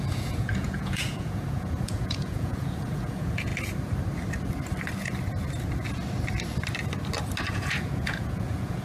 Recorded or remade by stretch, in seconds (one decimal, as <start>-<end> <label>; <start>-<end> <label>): 0.0-3.5 remade; 3.5-7.5 recorded; 7.5-8.8 remade